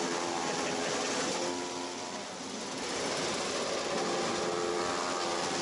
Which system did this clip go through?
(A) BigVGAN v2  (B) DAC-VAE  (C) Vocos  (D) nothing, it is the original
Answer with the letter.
D